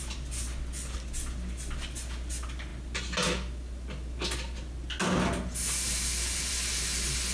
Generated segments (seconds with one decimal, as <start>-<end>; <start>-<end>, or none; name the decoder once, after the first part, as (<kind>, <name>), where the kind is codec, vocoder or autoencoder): none